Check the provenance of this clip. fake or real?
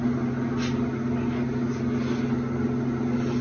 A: real